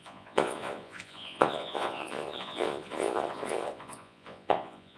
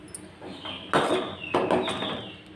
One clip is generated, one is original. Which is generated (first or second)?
first